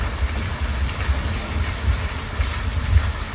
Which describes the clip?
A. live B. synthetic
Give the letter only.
A